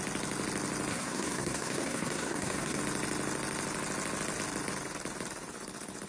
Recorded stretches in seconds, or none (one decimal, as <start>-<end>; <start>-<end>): 0.0-0.9; 2.8-6.1